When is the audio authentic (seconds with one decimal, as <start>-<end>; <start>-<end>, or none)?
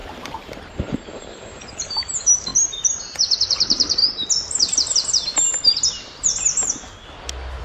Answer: 2.5-3.0; 4.0-7.6